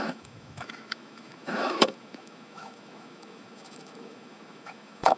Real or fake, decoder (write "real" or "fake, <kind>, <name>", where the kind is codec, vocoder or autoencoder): fake, autoencoder, DAC-VAE